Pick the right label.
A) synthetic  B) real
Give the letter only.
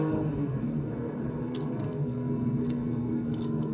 A